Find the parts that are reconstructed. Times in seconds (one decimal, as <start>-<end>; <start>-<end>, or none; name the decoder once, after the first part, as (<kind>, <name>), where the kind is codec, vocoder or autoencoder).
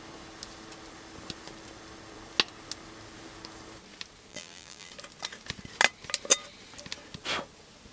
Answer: 4.3-4.9 (vocoder, BigVGAN v2)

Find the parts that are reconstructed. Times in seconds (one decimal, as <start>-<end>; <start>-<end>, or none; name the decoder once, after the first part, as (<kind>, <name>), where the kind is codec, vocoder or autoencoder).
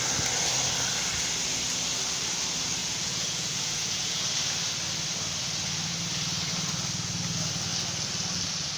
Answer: 2.8-4.3 (vocoder, Vocos)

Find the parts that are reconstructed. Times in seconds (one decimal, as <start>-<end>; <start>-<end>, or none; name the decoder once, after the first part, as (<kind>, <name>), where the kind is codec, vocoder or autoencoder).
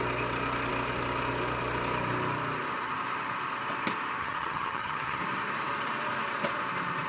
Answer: 4.2-5.2 (vocoder, HiFi-GAN)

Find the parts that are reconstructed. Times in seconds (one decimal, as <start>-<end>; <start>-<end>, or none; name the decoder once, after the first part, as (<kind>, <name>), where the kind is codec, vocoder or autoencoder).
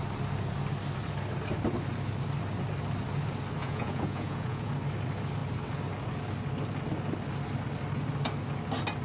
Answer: 3.6-4.7 (vocoder, Vocos)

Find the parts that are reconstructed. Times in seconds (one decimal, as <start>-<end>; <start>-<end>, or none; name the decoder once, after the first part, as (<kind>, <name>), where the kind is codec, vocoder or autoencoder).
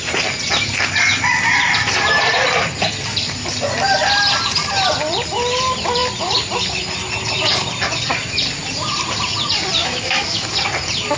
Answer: 9.8-10.5 (autoencoder, DAC-VAE)